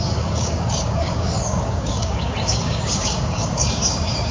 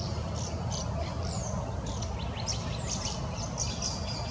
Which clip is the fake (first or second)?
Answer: first